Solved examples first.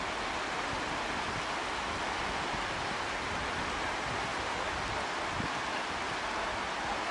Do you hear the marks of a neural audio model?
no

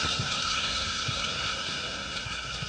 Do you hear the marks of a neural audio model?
yes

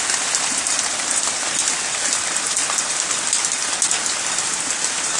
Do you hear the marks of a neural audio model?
no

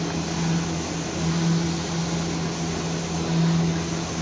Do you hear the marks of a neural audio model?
no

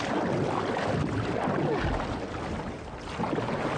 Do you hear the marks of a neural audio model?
no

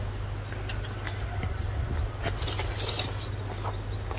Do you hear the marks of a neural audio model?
no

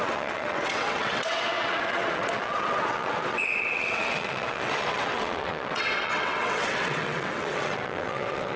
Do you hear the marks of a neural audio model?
yes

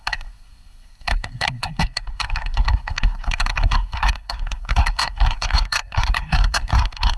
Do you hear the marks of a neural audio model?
yes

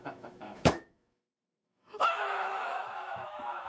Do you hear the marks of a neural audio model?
yes